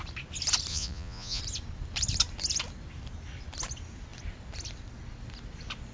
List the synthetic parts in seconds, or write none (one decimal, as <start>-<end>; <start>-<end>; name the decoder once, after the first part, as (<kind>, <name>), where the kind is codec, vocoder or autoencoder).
0.7-1.4 (vocoder, Vocos)